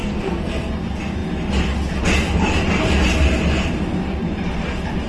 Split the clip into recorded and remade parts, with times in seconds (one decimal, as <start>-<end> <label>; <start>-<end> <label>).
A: 0.0-0.7 remade; 0.7-5.1 recorded